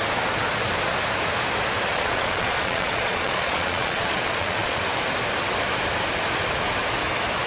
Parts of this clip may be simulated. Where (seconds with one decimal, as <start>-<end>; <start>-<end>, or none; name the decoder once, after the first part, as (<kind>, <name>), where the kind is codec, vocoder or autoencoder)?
1.9-4.8 (vocoder, Vocos)